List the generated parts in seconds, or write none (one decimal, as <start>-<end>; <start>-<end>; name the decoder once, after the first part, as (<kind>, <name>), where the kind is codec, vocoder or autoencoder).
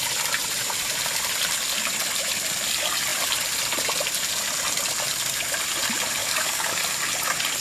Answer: 6.2-6.8 (codec, DAC)